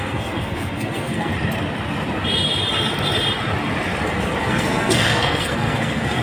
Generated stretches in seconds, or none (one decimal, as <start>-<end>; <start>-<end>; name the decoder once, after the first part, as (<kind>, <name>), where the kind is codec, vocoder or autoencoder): 0.0-1.3 (codec, SNAC); 4.4-6.2